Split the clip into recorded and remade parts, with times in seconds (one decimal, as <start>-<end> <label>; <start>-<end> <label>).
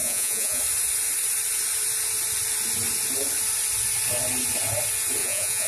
0.0-0.6 remade; 0.6-5.2 recorded; 5.2-5.7 remade